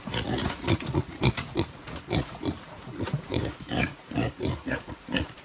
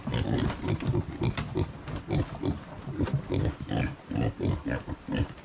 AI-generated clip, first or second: first